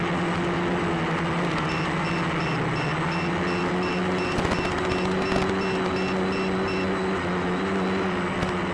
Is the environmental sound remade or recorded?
recorded